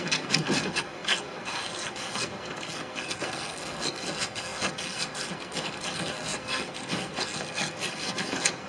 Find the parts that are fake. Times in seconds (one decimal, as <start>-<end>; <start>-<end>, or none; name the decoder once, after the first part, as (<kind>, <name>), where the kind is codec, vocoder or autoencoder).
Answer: 0.0-8.7 (codec, SNAC)